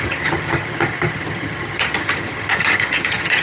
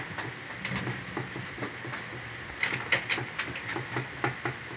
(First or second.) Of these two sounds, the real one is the second